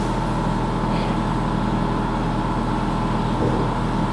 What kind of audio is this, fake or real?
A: real